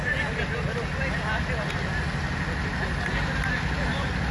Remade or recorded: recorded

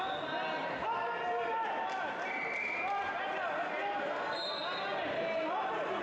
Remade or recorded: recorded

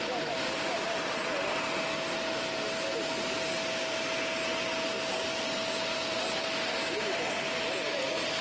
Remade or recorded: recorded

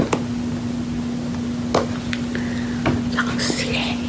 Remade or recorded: recorded